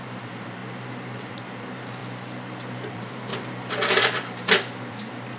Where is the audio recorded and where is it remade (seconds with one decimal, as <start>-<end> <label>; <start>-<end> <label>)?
0.0-0.6 remade; 0.6-1.3 recorded; 1.3-2.0 remade; 2.0-2.9 recorded; 2.9-3.3 remade; 3.3-3.9 recorded; 3.9-5.4 remade